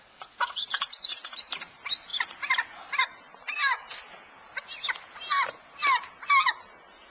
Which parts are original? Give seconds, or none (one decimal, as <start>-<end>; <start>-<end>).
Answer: 0.0-7.1